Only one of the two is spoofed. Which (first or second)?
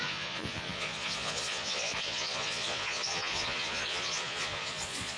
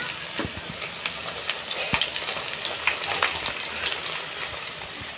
first